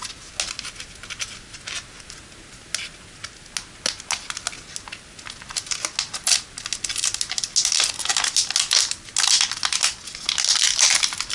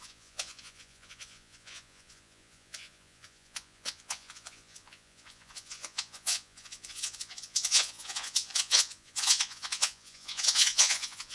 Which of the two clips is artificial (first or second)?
second